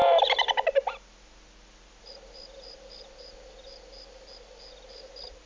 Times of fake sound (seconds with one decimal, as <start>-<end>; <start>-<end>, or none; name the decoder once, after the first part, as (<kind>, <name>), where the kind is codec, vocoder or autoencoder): none